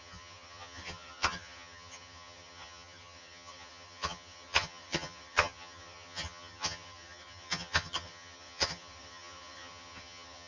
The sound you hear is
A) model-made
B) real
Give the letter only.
A